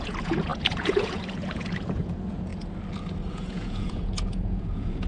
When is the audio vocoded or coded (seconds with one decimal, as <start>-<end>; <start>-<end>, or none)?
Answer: 0.0-2.5; 3.3-5.1